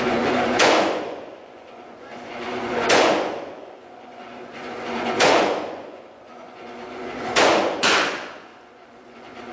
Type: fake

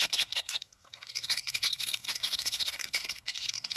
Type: fake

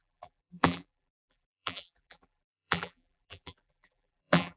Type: fake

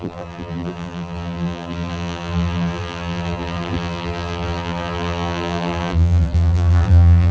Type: fake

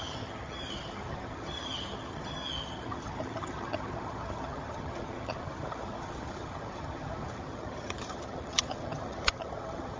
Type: fake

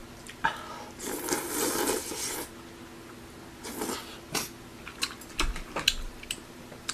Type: real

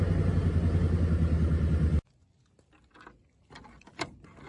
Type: real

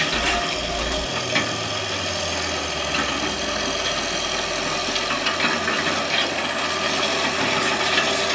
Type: real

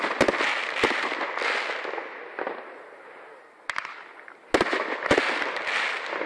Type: real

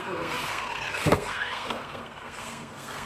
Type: fake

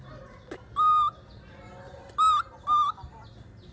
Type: real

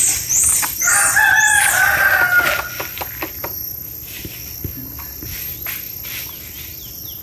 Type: real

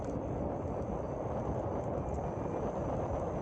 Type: real